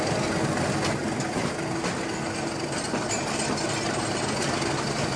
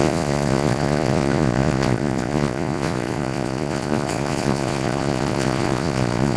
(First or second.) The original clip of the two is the first